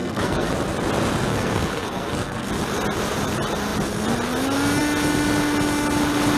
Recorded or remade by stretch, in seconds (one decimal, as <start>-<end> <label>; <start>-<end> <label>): 0.0-0.5 remade; 0.5-1.3 recorded; 1.3-2.5 remade; 2.5-6.4 recorded